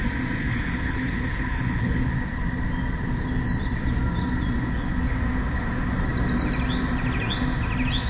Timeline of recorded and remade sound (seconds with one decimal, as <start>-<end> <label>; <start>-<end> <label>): 0.0-0.4 recorded; 0.4-2.1 remade; 2.1-8.1 recorded